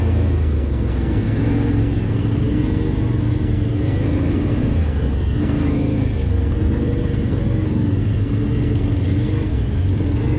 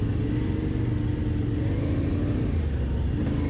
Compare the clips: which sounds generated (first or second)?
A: first